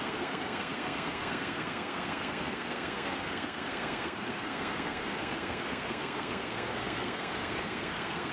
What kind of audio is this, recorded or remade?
remade